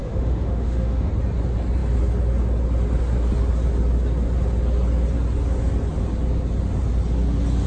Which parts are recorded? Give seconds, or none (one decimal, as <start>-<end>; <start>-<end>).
1.1-7.7